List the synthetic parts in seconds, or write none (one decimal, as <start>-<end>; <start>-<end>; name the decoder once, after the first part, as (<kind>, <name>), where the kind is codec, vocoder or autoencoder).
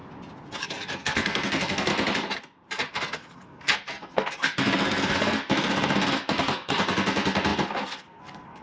0.6-1.9 (codec, SNAC); 2.9-8.6